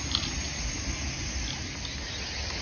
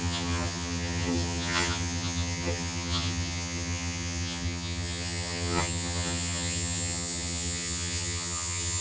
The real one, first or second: first